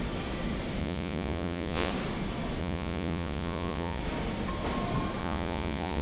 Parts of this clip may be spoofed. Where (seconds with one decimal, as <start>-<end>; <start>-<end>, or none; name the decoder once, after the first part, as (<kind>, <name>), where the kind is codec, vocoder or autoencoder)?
0.8-1.9 (vocoder, Vocos); 2.6-4.0; 5.2-6.0